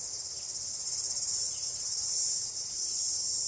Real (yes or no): yes